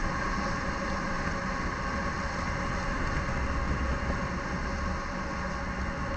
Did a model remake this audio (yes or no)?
no